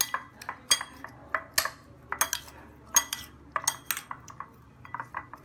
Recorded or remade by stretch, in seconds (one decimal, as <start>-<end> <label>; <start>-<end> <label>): 0.0-5.4 recorded